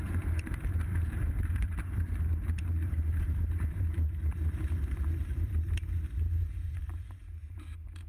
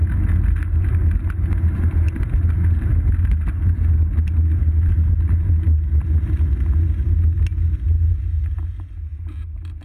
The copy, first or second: first